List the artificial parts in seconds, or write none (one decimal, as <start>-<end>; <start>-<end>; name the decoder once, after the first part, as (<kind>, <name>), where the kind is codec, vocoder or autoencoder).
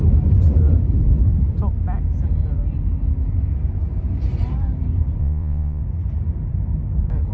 5.2-5.8 (vocoder, Vocos)